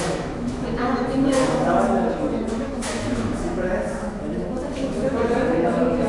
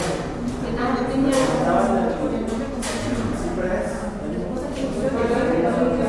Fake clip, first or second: first